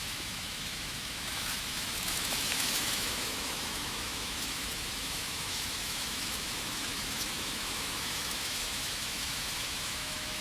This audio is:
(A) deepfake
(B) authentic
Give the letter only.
A